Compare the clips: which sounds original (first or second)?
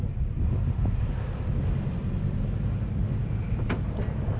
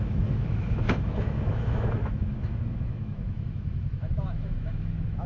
first